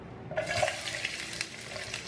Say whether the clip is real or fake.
real